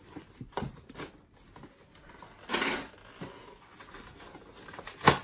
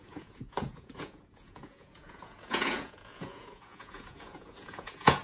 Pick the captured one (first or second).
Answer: first